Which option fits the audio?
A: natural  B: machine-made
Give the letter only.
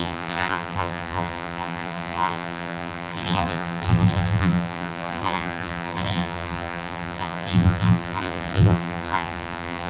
B